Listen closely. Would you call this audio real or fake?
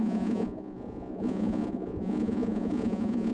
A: fake